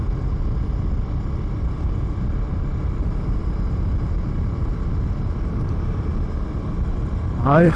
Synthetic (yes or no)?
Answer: no